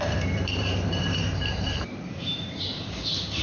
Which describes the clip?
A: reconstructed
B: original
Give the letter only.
A